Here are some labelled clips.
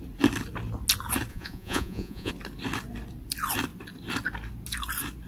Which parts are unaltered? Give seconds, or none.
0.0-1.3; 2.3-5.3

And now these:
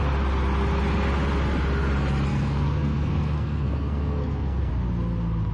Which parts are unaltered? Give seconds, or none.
0.0-2.3; 4.7-5.5

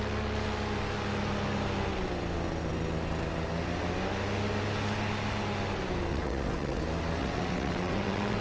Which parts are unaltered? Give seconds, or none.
0.0-6.1; 6.8-7.2

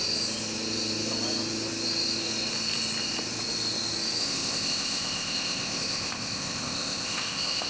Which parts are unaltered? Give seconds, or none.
0.0-4.2